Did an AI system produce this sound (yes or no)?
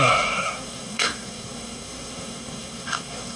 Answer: yes